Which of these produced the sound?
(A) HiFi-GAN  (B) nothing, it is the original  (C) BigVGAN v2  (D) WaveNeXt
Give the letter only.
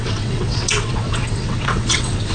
D